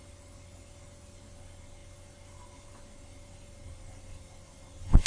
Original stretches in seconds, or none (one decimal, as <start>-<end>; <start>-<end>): 0.0-5.1

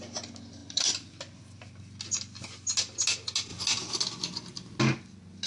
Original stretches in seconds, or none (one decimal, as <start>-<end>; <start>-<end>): 0.0-5.5

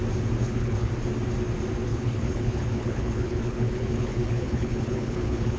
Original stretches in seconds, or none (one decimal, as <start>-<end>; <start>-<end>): 0.0-0.4; 0.9-1.9

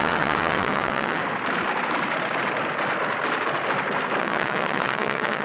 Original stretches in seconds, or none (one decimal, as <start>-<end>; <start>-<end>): 1.2-4.2

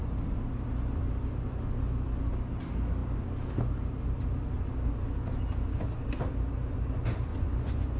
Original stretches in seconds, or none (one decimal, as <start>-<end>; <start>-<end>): 0.0-7.3

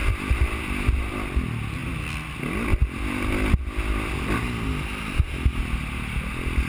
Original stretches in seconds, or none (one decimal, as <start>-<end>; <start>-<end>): 0.6-6.7